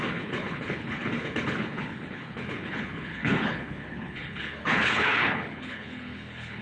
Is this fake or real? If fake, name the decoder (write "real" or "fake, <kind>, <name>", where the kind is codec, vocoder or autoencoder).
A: fake, codec, HILCodec